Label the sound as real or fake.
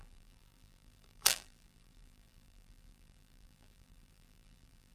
fake